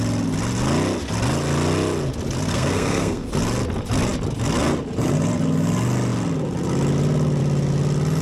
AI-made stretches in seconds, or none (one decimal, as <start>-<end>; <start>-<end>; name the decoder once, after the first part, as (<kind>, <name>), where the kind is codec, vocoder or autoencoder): 2.5-3.3 (codec, SNAC)